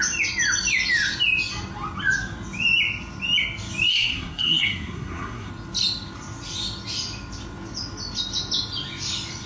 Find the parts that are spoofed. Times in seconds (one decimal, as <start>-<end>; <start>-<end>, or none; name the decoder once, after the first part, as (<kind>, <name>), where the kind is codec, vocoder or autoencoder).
3.9-5.5 (codec, SNAC)

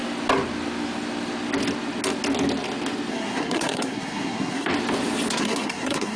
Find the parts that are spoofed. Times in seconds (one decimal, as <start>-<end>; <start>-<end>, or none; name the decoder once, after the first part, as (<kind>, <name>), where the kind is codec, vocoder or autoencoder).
3.1-4.7 (codec, SNAC); 5.3-6.2

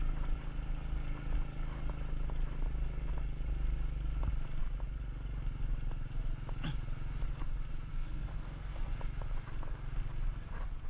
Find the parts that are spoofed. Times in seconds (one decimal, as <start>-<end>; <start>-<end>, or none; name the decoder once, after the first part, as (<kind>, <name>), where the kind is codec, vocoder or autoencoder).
7.9-8.9 (codec, SNAC)